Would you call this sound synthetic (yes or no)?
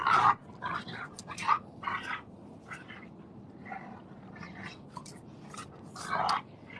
yes